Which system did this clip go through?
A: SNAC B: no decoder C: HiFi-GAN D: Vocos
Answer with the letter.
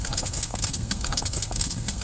A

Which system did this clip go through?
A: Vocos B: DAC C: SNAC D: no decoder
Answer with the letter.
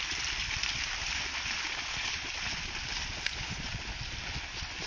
D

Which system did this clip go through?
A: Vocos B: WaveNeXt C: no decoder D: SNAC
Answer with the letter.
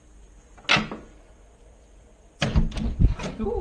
C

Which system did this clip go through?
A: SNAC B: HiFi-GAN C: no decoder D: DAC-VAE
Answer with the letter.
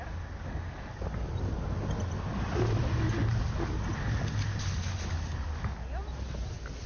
C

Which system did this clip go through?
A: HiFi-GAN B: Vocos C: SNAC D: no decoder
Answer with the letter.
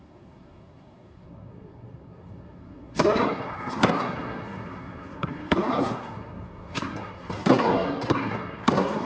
C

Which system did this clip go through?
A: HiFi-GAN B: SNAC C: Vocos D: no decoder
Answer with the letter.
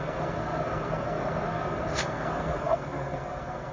B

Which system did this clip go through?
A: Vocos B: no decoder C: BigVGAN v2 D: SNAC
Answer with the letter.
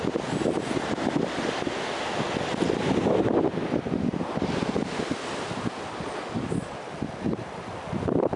B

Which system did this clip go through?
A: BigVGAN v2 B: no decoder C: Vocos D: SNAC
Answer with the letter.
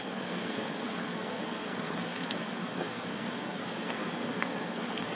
D